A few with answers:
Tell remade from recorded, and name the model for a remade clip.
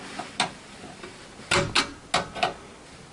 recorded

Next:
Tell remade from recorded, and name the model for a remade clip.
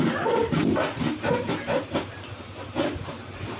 remade, vocoder, BigVGAN v2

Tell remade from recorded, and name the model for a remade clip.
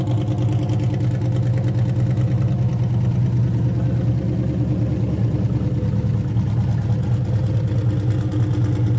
recorded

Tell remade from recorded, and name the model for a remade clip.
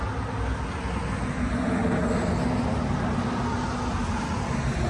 recorded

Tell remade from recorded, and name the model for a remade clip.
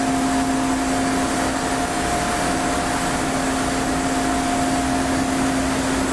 recorded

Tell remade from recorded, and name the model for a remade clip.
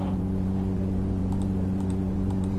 remade, vocoder, BigVGAN v2